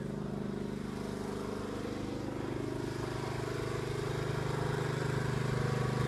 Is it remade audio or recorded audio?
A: recorded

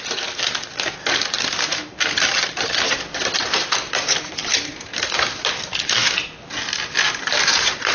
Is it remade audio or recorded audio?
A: recorded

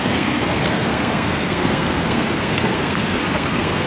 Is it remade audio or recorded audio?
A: remade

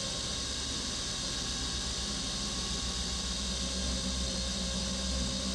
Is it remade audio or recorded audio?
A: recorded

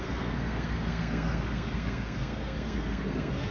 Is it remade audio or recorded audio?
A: remade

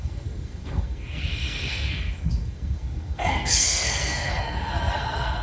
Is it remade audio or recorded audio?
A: remade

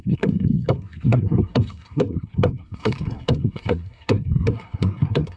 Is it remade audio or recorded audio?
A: remade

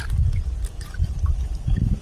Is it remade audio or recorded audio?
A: recorded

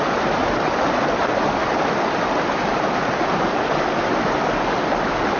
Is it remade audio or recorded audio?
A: recorded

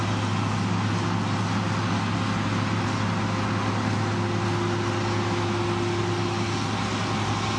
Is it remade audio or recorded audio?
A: recorded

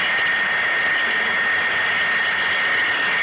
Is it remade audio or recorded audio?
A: recorded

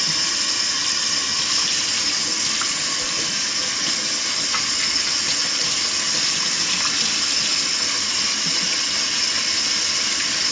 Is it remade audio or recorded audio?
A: recorded